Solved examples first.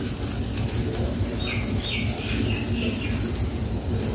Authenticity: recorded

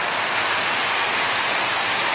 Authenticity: recorded